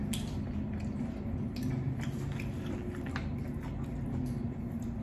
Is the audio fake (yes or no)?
no